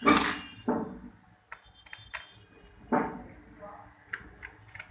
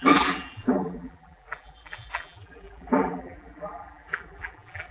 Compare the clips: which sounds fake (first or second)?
second